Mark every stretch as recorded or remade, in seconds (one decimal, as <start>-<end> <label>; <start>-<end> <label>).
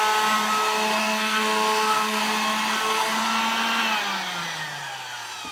0.0-1.0 recorded; 1.0-2.2 remade; 2.2-5.5 recorded